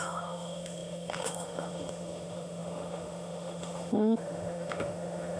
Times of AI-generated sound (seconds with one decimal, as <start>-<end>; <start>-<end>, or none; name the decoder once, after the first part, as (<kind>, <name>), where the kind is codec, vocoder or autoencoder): 0.0-5.4 (autoencoder, DAC-VAE)